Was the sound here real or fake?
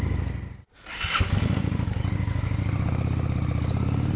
real